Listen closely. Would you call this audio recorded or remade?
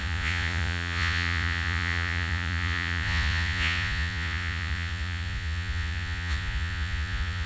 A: remade